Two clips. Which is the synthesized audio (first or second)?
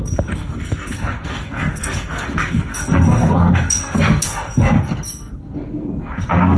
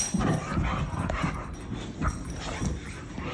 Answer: first